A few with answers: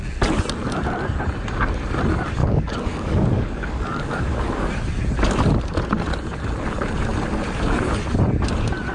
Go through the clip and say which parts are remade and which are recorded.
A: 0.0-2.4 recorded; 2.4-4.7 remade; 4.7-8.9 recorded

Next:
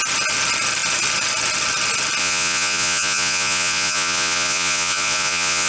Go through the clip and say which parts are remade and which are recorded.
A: 0.0-2.2 recorded; 2.2-5.7 remade

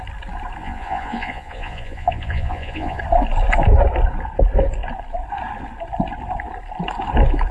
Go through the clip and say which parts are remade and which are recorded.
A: 0.0-0.6 recorded; 0.6-3.0 remade; 3.0-7.5 recorded

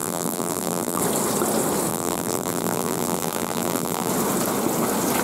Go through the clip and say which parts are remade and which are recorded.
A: 0.0-1.0 remade; 1.0-1.9 recorded; 1.9-4.1 remade; 4.1-5.2 recorded

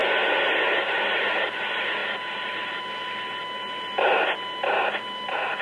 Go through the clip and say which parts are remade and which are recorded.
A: 0.0-5.6 recorded

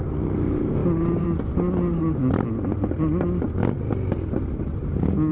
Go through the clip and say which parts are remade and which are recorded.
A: 0.0-0.8 recorded; 0.8-1.5 remade; 1.5-5.3 recorded

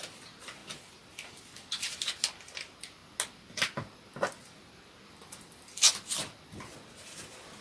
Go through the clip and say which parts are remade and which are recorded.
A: 0.0-7.6 recorded

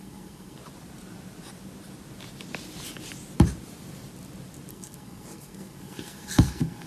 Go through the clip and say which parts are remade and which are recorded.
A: 0.0-0.6 remade; 0.6-4.7 recorded; 4.7-6.9 remade